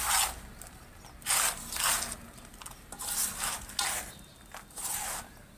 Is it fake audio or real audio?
real